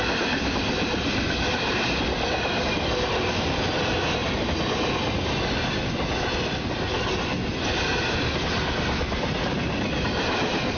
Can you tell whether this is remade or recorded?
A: recorded